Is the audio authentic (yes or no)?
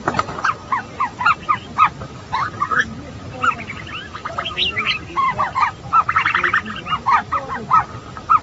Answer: yes